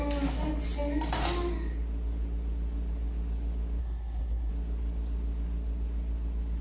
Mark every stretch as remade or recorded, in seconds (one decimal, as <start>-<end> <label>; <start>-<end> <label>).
0.0-3.8 recorded; 3.8-4.5 remade; 4.5-6.6 recorded